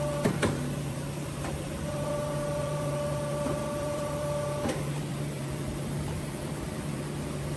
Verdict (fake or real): fake